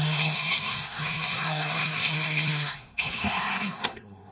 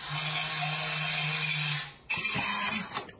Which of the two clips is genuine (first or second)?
second